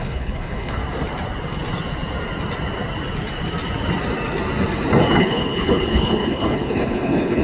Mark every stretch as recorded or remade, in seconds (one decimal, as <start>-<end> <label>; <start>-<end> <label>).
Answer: 0.0-0.8 remade; 0.8-5.2 recorded; 5.2-7.4 remade